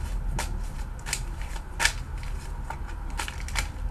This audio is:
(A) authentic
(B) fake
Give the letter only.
A